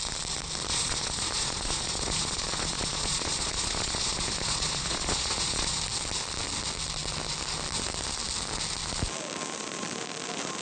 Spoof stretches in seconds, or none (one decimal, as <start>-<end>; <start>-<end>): 0.7-5.8